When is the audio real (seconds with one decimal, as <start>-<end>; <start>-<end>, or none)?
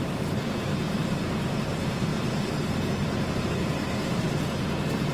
2.1-2.9